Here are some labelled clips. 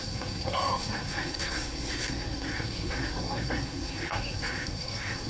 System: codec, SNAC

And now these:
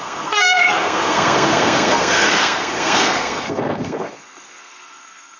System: codec, SNAC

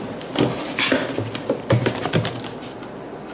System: none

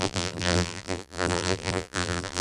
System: vocoder, BigVGAN v2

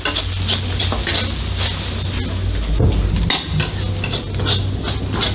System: none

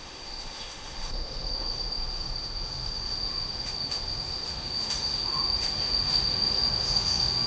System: autoencoder, DAC-VAE